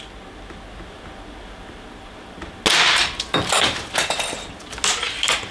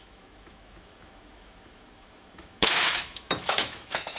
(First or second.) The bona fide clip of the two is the first